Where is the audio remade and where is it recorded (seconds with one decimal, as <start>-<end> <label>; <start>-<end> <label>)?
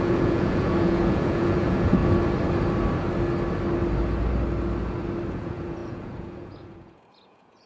0.0-2.0 remade; 2.0-5.3 recorded; 5.3-7.7 remade